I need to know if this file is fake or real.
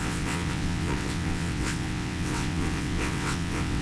fake